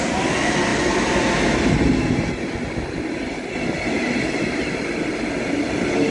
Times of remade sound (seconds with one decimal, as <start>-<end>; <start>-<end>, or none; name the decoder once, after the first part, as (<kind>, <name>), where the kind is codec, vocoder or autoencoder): none